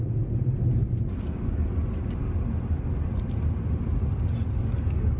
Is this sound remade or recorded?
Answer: recorded